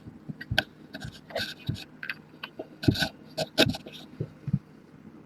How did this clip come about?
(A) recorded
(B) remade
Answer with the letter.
A